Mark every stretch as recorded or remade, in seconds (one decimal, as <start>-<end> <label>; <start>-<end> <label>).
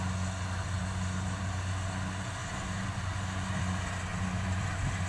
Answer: 0.0-0.8 recorded; 0.8-1.4 remade; 1.4-2.4 recorded; 2.4-3.6 remade; 3.6-4.1 recorded; 4.1-4.6 remade; 4.6-5.1 recorded